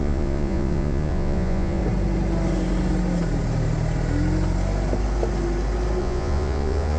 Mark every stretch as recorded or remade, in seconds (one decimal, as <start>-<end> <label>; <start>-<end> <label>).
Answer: 0.0-1.8 remade; 1.8-6.0 recorded; 6.0-7.0 remade